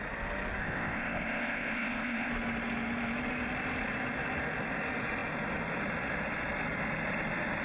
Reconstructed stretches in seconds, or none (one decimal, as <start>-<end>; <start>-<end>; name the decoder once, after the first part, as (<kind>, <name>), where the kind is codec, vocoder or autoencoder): 0.6-2.3 (codec, ZipCodec)